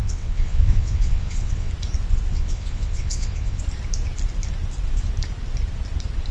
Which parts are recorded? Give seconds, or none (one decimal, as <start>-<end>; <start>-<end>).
1.7-2.3; 3.6-6.3